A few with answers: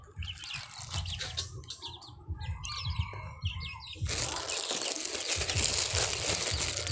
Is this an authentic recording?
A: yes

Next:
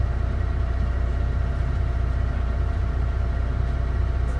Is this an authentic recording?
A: yes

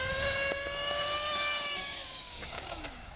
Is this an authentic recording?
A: no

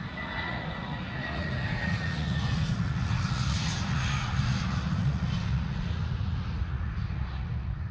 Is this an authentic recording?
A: no